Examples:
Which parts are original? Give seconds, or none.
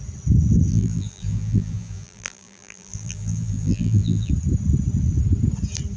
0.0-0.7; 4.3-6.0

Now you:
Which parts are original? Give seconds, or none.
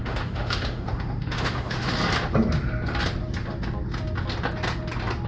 1.9-5.3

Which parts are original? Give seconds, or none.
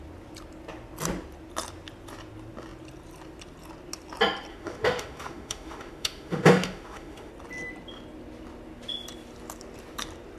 0.0-4.5; 7.3-10.4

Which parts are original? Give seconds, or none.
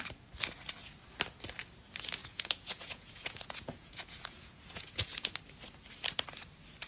0.0-2.2; 5.3-6.9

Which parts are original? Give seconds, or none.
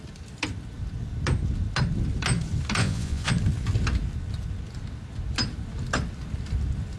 0.0-2.8; 3.3-7.0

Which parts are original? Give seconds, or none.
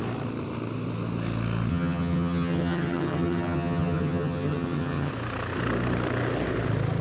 0.0-1.7; 5.1-7.0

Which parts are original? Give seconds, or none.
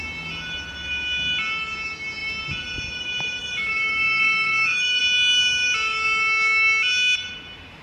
0.0-3.4; 5.0-7.8